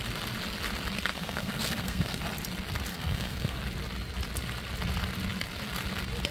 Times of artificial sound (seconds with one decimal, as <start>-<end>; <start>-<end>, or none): 1.1-2.2; 2.9-3.6